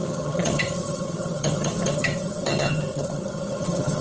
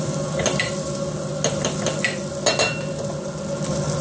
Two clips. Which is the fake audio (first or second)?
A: first